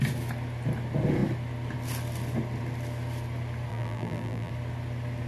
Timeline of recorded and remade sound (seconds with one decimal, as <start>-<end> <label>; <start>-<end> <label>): 0.0-3.7 recorded; 3.7-4.5 remade; 4.5-5.3 recorded